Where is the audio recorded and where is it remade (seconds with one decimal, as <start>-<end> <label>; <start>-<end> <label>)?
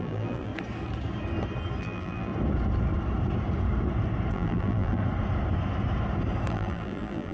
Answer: 0.0-0.5 remade; 0.5-1.8 recorded; 1.8-2.3 remade; 2.3-4.3 recorded; 4.3-5.0 remade; 5.0-6.5 recorded; 6.5-7.3 remade